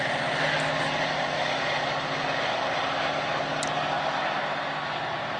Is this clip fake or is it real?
real